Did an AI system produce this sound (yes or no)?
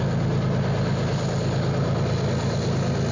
no